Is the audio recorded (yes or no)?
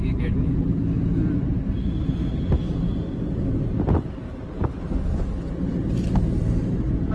yes